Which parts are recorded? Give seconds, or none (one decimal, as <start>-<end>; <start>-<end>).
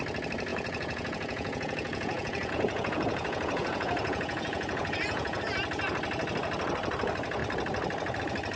0.0-0.5; 5.4-8.6